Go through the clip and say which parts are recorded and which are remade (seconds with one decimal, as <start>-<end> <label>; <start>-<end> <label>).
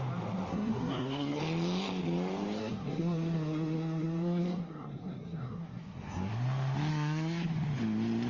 0.0-0.5 recorded; 0.5-1.4 remade; 1.4-2.6 recorded; 2.6-6.3 remade; 6.3-6.9 recorded; 6.9-7.5 remade; 7.5-8.3 recorded